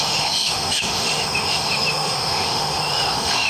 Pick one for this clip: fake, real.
fake